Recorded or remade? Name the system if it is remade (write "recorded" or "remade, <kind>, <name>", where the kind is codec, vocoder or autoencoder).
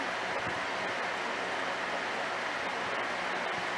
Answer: recorded